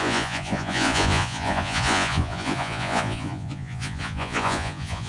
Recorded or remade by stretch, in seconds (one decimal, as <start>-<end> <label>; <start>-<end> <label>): 0.0-5.1 remade